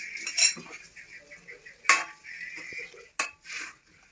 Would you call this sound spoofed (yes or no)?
no